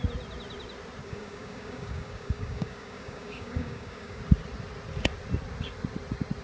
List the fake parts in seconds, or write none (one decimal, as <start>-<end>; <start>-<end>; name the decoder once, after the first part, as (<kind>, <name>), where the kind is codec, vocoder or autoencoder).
1.0-4.2 (codec, DAC)